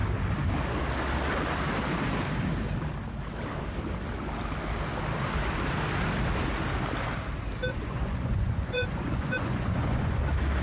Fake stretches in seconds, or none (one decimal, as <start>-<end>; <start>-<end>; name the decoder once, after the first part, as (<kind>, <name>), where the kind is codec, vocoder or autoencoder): 7.7-10.2 (vocoder, Vocos)